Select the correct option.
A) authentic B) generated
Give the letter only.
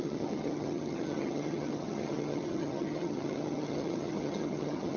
B